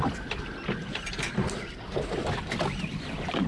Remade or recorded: recorded